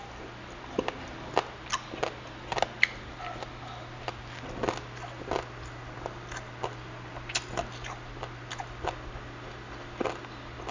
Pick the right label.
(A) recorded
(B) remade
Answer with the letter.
A